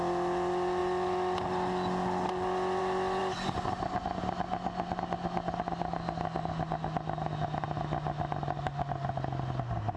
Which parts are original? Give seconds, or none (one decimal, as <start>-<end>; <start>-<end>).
0.0-10.0